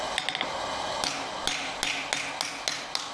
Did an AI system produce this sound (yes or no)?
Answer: no